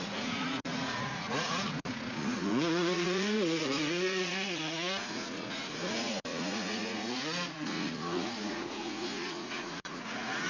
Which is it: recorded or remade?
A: remade